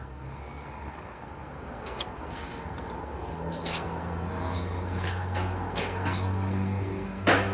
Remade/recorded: remade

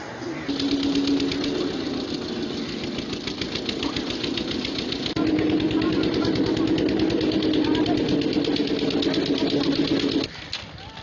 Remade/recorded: recorded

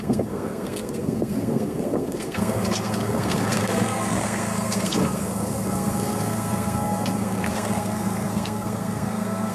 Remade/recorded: remade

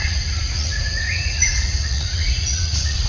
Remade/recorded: remade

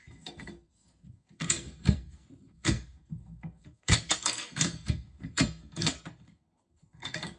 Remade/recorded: remade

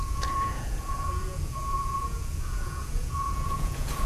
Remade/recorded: remade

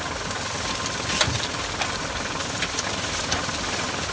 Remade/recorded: recorded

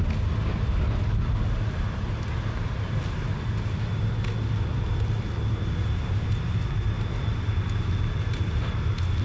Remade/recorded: recorded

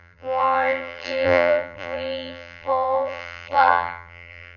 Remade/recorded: remade